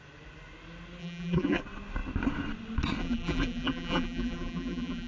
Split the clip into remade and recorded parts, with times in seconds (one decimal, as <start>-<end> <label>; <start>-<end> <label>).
0.0-1.0 recorded; 1.0-1.6 remade; 1.6-3.0 recorded; 3.0-5.1 remade